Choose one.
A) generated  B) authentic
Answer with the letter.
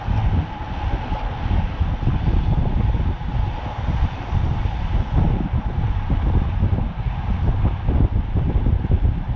B